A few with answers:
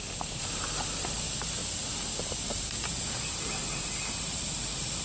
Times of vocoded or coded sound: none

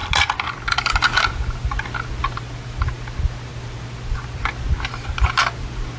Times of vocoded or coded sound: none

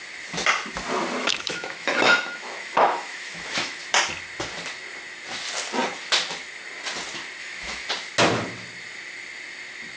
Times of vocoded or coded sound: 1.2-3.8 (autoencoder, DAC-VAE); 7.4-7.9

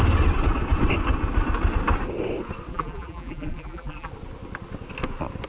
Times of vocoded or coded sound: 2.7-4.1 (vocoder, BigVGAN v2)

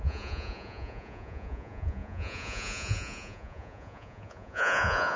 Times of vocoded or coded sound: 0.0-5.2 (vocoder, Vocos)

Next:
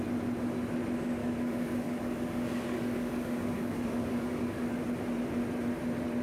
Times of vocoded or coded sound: 1.2-4.8 (codec, DAC)

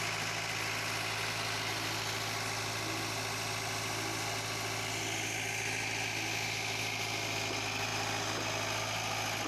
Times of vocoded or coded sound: none